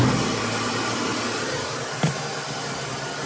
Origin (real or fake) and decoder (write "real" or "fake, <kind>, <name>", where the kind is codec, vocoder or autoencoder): real